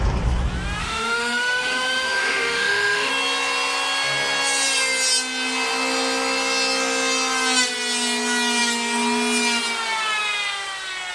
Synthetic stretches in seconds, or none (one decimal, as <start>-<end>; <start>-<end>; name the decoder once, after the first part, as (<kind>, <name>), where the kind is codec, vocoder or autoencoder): 0.8-3.1 (autoencoder, DAC-VAE)